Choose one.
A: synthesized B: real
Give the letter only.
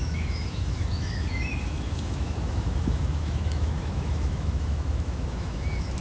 A